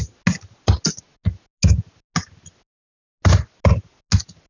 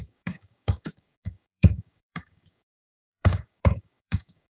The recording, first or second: first